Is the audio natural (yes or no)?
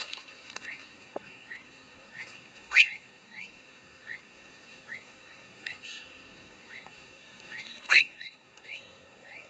no